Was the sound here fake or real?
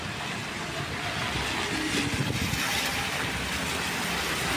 real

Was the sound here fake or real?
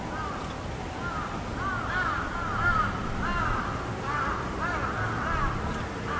real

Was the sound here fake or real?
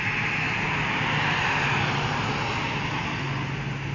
real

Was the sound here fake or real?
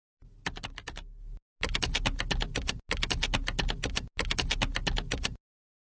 real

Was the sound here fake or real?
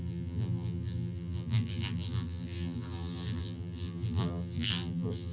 fake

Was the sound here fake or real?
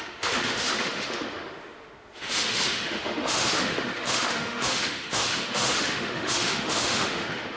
fake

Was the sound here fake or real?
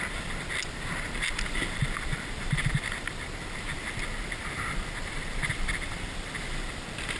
real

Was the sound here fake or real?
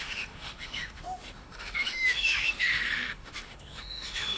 fake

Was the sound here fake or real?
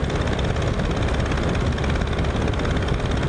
real